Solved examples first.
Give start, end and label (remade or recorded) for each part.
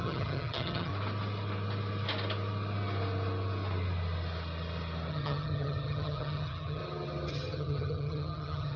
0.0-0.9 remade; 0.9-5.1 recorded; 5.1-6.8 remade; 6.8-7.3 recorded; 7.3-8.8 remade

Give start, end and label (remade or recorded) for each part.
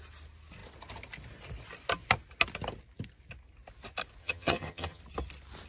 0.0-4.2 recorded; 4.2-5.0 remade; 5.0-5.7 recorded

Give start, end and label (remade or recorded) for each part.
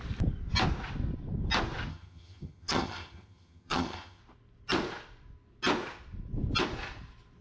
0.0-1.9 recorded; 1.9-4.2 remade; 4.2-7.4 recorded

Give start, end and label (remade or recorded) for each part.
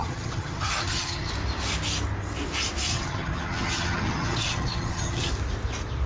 0.0-1.3 remade; 1.3-2.9 recorded; 2.9-5.3 remade; 5.3-6.1 recorded